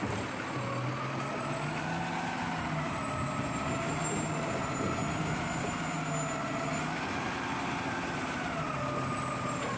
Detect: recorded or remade recorded